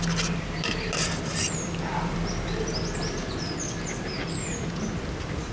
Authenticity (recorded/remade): remade